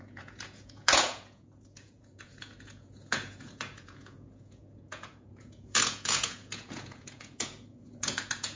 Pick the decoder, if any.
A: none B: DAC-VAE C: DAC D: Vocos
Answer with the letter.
D